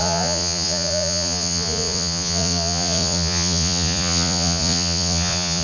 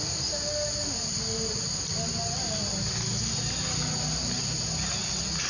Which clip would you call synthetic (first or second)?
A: first